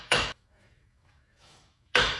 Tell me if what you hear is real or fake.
fake